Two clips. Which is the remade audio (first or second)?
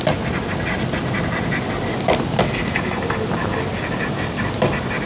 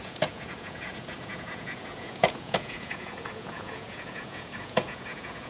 second